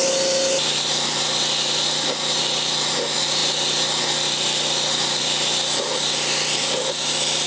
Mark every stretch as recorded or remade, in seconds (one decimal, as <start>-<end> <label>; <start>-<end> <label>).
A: 0.0-7.5 recorded